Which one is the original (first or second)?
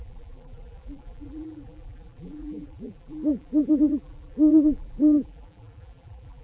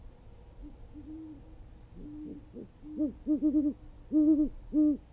second